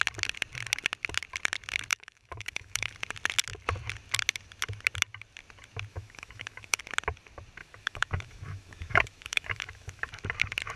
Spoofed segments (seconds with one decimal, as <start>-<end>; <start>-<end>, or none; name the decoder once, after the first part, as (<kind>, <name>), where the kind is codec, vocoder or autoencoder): 1.9-2.9 (autoencoder, DAC-VAE); 5.9-6.8; 7.6-10.1